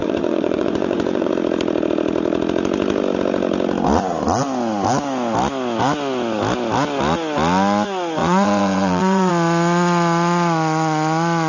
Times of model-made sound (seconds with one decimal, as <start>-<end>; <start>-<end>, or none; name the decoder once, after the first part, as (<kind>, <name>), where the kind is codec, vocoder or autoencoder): 0.0-1.3 (vocoder, Vocos); 8.2-9.3